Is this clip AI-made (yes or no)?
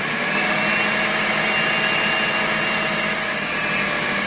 no